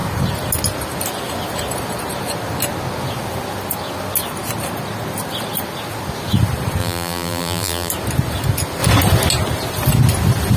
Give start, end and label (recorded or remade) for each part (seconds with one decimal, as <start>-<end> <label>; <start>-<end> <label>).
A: 0.0-6.8 recorded; 6.8-7.9 remade; 7.9-10.6 recorded